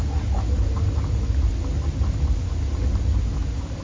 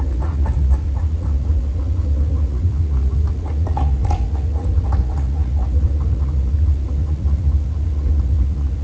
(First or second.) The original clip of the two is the first